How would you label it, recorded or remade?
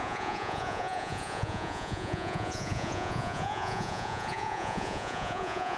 remade